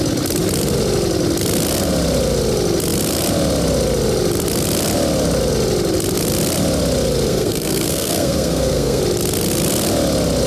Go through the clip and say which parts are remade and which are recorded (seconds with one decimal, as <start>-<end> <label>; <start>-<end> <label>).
0.0-7.3 recorded; 7.3-9.0 remade; 9.0-10.5 recorded